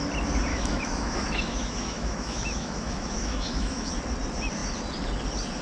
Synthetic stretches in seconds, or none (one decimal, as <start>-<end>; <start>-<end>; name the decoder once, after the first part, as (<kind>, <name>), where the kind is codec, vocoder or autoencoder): 0.5-3.9 (autoencoder, DAC-VAE)